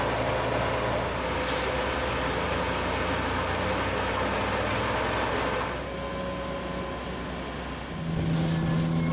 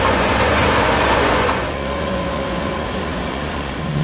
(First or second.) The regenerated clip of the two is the second